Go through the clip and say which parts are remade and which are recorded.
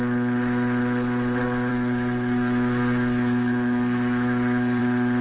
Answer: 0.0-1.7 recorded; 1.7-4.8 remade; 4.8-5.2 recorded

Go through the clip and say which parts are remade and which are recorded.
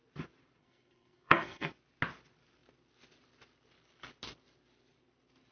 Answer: 0.0-0.6 recorded; 0.6-1.7 remade; 1.7-5.5 recorded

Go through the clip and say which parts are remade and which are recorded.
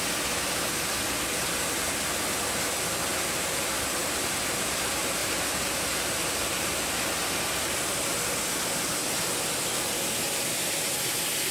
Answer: 0.0-3.1 recorded; 3.1-4.3 remade; 4.3-5.2 recorded; 5.2-6.8 remade; 6.8-11.5 recorded